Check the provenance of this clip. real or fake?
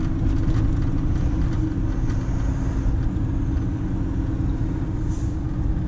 real